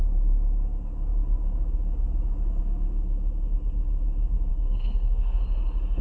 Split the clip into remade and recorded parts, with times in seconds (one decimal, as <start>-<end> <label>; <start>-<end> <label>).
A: 0.0-4.5 recorded; 4.5-5.4 remade; 5.4-6.0 recorded